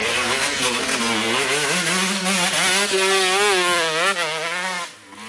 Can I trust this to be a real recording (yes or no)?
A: yes